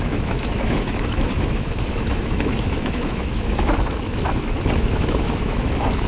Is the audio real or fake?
fake